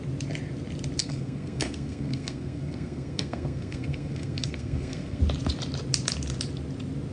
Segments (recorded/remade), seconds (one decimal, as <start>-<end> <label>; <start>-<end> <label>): 0.0-1.0 recorded; 1.0-5.2 remade; 5.2-7.1 recorded